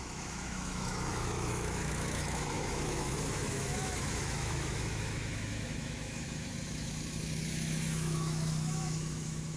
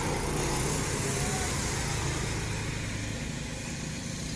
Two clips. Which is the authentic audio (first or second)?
second